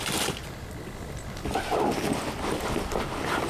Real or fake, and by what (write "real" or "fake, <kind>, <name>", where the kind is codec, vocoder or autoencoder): real